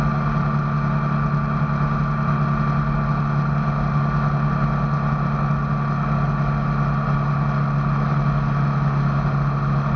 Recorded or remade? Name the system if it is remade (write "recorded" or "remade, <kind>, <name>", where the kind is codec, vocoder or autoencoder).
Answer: recorded